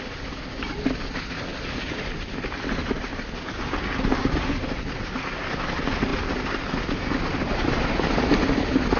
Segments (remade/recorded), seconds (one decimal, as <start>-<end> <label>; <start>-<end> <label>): 0.0-9.0 recorded